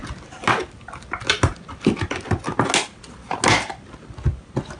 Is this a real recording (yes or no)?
yes